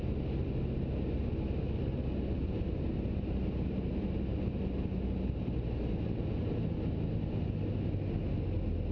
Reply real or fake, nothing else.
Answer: real